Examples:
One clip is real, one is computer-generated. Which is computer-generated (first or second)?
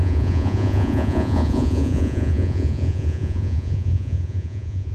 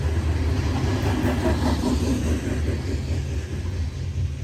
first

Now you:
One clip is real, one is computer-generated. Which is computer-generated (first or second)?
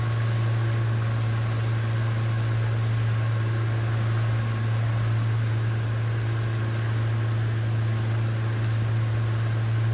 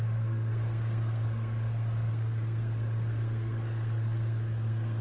second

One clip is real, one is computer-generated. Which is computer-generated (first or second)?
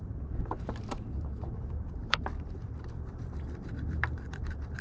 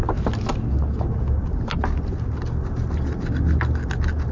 first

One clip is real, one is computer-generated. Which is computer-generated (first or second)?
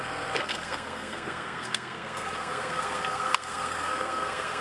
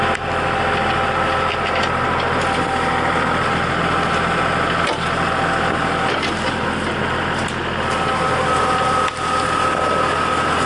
first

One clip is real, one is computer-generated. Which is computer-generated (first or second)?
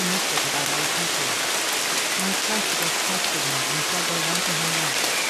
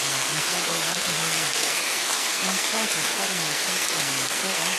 second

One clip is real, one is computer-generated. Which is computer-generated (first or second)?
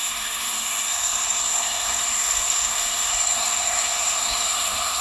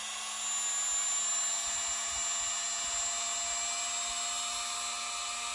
first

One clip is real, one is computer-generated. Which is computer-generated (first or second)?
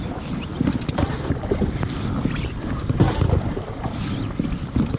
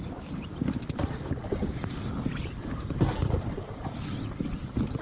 second